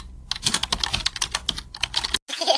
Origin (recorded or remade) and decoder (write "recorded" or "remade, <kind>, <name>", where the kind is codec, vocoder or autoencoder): recorded